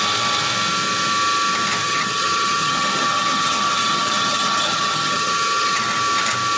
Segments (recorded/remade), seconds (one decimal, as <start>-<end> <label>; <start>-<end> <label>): 0.0-1.8 recorded; 1.8-5.8 remade; 5.8-6.6 recorded